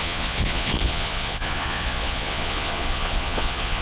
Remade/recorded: remade